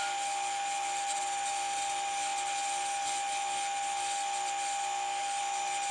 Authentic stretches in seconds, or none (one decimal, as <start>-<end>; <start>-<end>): 0.0-5.9